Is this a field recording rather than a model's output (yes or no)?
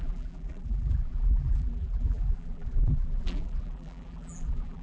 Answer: no